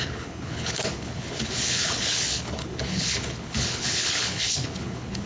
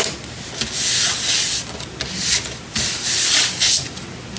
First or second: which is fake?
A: first